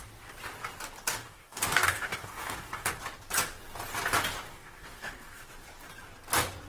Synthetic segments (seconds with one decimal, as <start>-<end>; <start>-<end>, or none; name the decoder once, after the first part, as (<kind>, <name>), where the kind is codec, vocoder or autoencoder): 1.1-2.9 (codec, DAC); 4.5-5.5